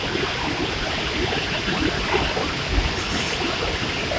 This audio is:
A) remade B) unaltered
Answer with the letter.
B